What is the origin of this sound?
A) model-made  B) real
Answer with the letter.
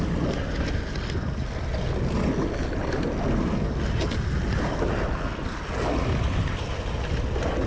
B